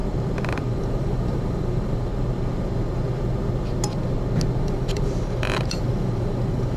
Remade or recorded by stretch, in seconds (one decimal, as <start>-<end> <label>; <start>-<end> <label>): 0.0-0.7 recorded; 0.7-2.1 remade; 2.1-4.6 recorded; 4.6-6.8 remade